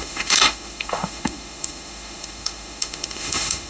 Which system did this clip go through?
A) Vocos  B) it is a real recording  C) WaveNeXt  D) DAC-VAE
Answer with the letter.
D